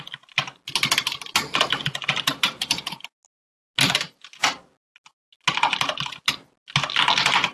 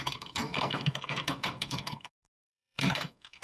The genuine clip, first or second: first